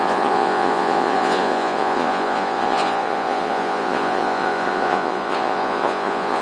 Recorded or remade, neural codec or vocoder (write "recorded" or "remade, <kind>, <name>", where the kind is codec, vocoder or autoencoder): remade, vocoder, Vocos